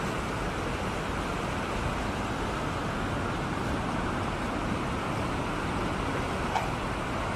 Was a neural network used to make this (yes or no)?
no